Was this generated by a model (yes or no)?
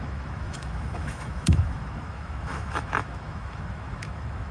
yes